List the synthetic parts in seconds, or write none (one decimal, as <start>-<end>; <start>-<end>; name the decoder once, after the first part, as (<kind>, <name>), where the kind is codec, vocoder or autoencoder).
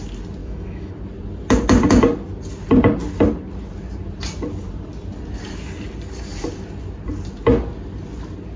0.4-0.9 (autoencoder, DAC-VAE)